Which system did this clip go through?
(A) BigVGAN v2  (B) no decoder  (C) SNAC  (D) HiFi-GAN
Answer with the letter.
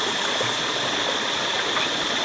B